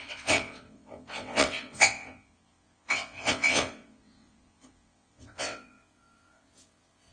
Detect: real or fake fake